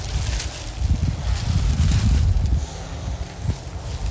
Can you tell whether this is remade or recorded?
recorded